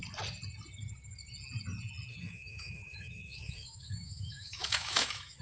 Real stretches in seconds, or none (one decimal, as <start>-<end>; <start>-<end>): 0.0-2.1

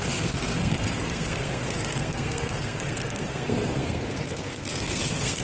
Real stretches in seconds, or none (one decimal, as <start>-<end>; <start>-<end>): none

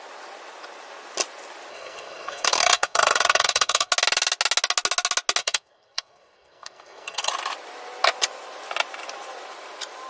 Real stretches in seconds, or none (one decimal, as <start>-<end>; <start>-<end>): 0.0-1.7; 3.9-5.4; 7.3-10.1

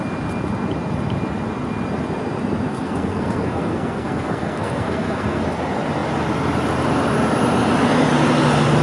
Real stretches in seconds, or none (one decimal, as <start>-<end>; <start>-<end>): 0.0-2.7; 5.4-8.8

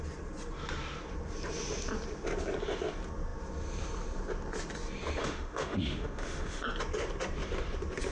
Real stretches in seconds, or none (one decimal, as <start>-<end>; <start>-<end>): 0.0-5.2; 6.6-8.1

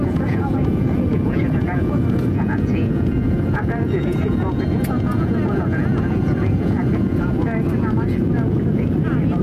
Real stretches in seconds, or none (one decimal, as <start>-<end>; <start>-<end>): none

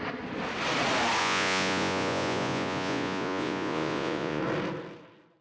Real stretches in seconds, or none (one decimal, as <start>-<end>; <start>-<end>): 0.0-1.2; 4.4-5.4

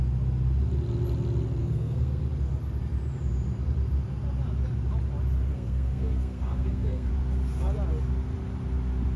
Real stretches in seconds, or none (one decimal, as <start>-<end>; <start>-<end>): 0.0-1.6; 2.2-5.5; 7.1-9.2